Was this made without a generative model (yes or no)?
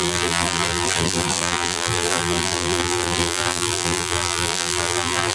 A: no